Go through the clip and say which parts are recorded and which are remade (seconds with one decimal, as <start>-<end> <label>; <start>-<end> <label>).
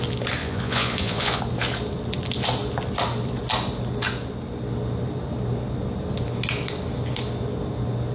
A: 0.0-0.4 recorded; 0.4-1.4 remade; 1.4-8.1 recorded